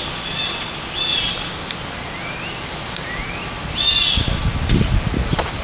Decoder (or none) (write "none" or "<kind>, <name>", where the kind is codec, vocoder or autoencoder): none